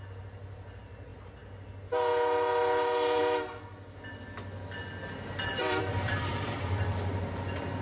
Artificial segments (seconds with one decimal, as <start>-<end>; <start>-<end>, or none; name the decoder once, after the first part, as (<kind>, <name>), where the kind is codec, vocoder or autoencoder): 5.6-7.2 (vocoder, BigVGAN v2)